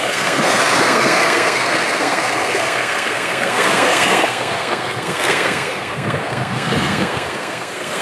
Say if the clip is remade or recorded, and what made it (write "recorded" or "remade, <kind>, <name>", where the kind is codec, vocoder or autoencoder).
remade, codec, SNAC